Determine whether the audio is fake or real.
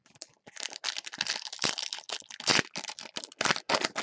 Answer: real